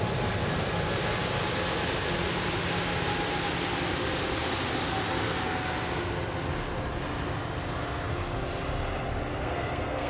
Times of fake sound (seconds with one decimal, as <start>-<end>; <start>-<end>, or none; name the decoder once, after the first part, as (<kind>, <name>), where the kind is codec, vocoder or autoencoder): 9.3-10.1 (codec, SNAC)